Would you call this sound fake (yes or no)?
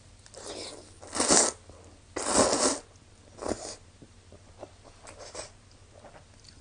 no